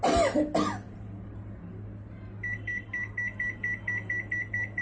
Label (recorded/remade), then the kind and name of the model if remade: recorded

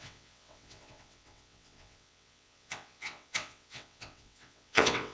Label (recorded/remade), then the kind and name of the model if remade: remade, vocoder, WaveNeXt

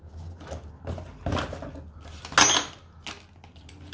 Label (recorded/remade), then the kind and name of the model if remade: recorded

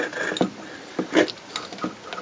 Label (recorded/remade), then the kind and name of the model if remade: recorded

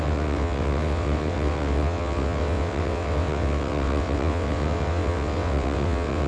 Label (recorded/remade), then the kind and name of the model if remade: remade, vocoder, WaveNeXt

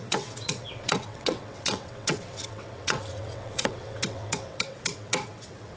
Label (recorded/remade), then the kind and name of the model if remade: remade, vocoder, WaveNeXt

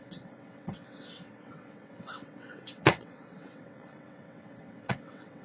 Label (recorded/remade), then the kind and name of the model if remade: remade, vocoder, WaveNeXt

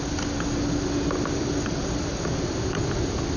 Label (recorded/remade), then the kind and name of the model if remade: recorded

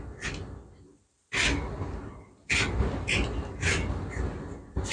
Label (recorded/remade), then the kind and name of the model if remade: recorded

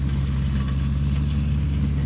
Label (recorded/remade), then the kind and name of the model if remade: recorded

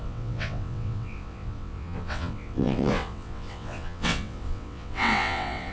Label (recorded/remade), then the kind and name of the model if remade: remade, vocoder, WaveNeXt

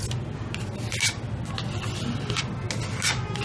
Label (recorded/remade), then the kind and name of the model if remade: recorded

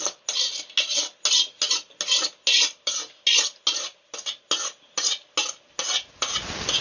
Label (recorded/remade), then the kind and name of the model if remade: recorded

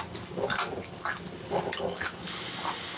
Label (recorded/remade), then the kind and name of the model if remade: recorded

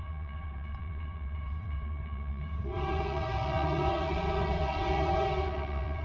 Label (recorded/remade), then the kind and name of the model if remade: remade, vocoder, WaveNeXt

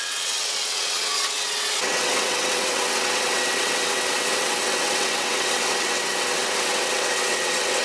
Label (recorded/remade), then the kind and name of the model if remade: remade, vocoder, WaveNeXt